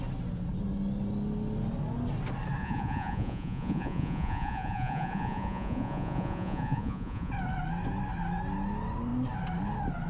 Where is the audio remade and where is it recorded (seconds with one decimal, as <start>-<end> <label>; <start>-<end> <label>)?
0.0-2.6 recorded; 2.6-7.3 remade; 7.3-10.1 recorded